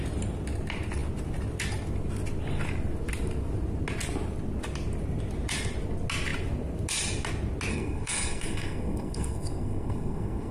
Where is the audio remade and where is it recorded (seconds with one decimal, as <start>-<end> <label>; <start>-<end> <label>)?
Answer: 0.0-7.7 recorded; 7.7-10.5 remade

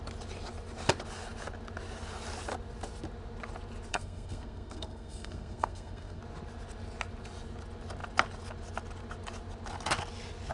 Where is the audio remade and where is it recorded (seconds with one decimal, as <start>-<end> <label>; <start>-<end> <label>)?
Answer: 0.0-3.9 recorded; 3.9-6.2 remade; 6.2-10.5 recorded

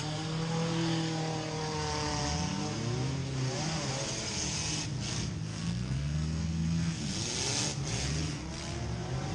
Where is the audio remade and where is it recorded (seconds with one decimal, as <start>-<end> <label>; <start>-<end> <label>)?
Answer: 0.0-5.5 recorded; 5.5-7.1 remade; 7.1-9.3 recorded